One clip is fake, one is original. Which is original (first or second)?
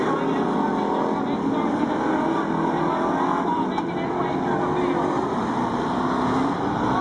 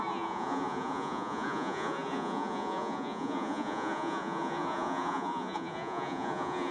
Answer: first